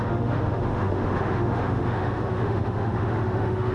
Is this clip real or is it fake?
fake